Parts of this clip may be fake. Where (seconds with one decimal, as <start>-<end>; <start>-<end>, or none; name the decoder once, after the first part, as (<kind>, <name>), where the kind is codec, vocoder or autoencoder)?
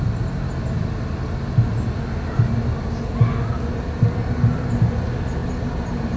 5.4-6.2 (vocoder, BigVGAN v2)